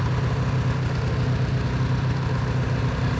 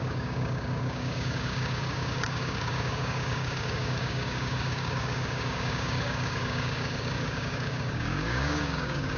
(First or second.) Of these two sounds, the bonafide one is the first